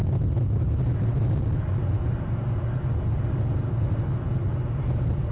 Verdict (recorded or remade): recorded